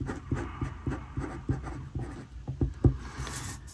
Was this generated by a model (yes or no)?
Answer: no